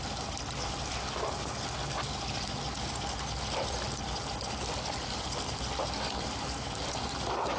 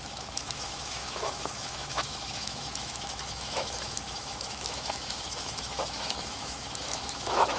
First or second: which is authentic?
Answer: first